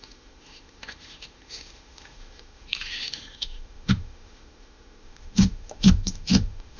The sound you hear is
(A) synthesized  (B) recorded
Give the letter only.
A